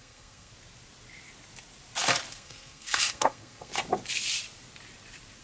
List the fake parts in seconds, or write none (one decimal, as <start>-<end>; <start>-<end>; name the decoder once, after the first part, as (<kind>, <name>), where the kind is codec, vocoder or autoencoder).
0.0-0.5 (codec, SNAC); 2.3-3.7